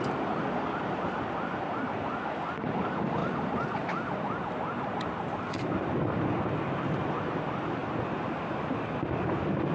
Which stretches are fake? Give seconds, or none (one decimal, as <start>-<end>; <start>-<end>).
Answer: none